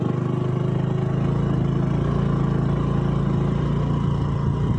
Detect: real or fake real